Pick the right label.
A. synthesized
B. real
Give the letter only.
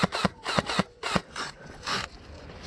A